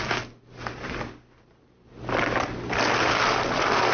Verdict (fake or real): real